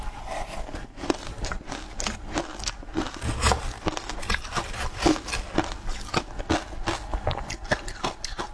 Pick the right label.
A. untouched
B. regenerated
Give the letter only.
A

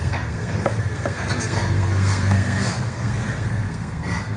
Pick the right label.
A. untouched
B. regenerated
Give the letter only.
B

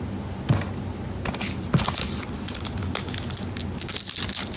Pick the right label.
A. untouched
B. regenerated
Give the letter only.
A